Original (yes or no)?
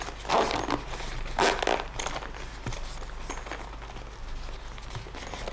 yes